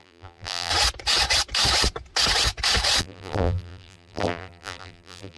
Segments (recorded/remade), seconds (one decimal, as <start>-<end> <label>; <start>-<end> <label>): 0.0-0.7 remade; 0.7-3.0 recorded; 3.0-5.4 remade